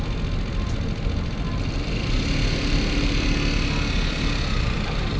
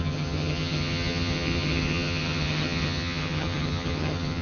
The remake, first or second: second